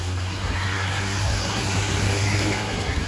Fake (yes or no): yes